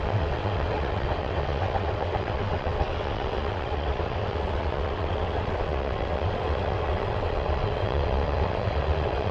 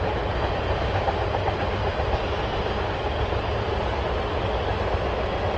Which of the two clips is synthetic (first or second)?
first